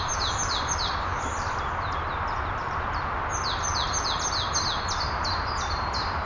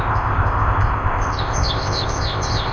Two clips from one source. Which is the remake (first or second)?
second